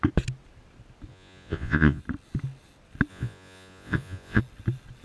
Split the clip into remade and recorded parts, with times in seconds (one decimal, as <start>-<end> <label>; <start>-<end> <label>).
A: 0.0-1.1 recorded; 1.1-2.0 remade; 2.0-3.1 recorded; 3.1-4.4 remade; 4.4-5.0 recorded